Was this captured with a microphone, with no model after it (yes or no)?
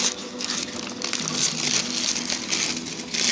yes